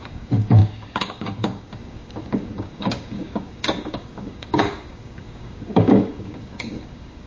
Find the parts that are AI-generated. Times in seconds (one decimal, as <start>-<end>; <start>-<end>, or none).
0.0-7.3